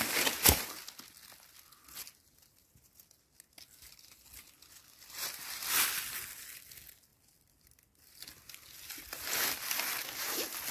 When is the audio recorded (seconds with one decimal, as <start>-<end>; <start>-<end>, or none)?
0.0-10.7